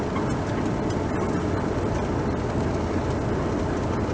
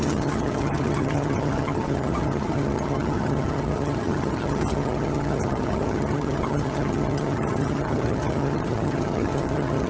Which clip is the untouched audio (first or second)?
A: first